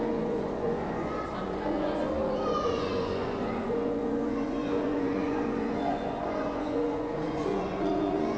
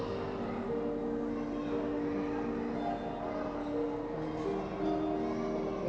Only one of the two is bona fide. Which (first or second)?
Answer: second